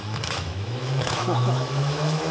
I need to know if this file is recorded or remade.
remade